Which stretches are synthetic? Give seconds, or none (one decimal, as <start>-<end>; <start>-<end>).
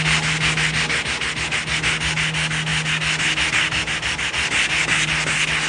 none